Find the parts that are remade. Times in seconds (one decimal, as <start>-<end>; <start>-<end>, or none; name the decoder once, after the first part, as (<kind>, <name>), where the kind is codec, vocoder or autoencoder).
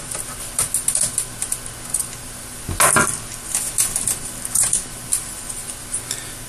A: none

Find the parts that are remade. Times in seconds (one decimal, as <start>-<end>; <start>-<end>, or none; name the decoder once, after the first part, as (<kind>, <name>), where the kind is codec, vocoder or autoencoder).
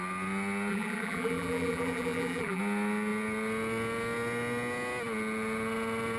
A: 0.7-2.6 (vocoder, BigVGAN v2)